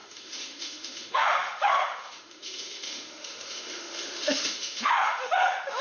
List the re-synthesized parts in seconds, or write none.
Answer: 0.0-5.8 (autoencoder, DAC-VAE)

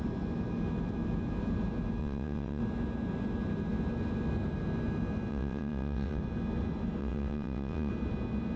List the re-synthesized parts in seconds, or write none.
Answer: 2.0-2.6 (vocoder, WaveNeXt); 5.3-6.2; 7.0-7.9

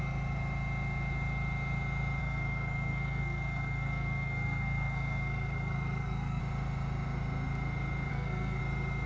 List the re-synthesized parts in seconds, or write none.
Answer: 2.2-6.4 (codec, SNAC); 8.1-8.6